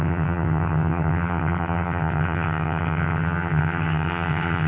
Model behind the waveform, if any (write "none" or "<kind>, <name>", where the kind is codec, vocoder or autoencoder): vocoder, HiFi-GAN